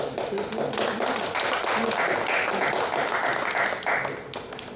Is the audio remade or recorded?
recorded